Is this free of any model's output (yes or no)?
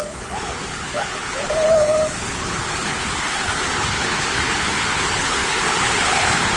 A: no